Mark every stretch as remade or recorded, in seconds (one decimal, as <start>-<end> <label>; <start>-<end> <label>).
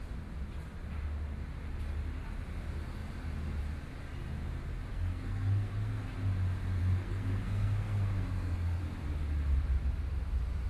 0.0-4.9 recorded; 4.9-6.0 remade; 6.0-6.8 recorded; 6.8-8.8 remade; 8.8-10.7 recorded